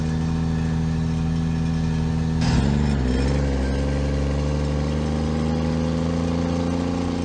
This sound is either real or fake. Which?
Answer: real